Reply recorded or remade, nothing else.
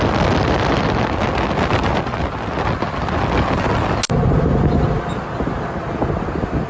recorded